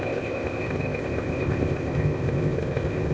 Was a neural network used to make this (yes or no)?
yes